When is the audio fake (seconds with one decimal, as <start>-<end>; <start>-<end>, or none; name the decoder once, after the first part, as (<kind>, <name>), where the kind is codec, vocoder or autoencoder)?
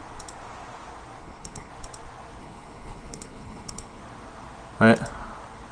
1.2-1.7 (codec, HILCodec); 2.4-4.0